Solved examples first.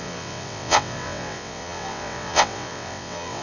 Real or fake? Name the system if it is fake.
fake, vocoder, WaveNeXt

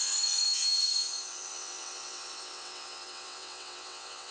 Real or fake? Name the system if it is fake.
fake, vocoder, WaveNeXt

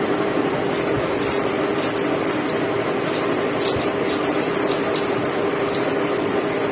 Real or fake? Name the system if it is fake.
real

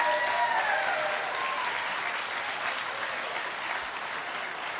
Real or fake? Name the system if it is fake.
real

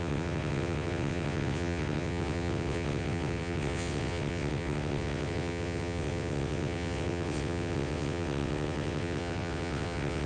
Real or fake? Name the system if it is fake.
fake, vocoder, WaveNeXt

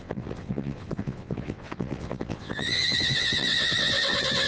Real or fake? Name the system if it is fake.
fake, vocoder, WaveNeXt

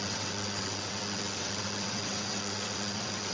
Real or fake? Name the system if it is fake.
fake, vocoder, WaveNeXt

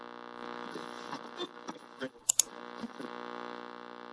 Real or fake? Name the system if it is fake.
real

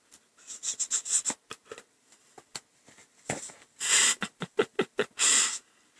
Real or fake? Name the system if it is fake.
real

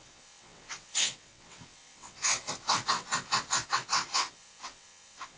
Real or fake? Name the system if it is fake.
fake, vocoder, WaveNeXt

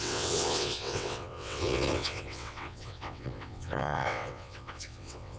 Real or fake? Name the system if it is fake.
fake, vocoder, WaveNeXt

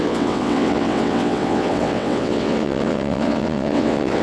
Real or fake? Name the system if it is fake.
fake, vocoder, WaveNeXt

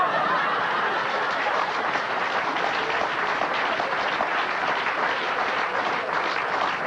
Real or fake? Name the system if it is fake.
real